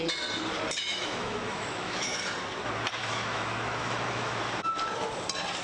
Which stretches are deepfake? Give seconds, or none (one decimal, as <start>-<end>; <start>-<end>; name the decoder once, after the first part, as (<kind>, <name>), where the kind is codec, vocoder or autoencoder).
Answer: 0.9-2.2 (autoencoder, DAC-VAE); 3.0-4.4